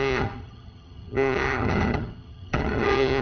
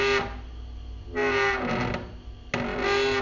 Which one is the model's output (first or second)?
first